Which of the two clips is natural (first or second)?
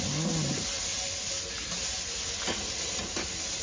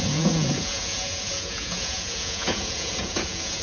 first